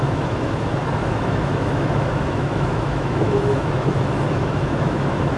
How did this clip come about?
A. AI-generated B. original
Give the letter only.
A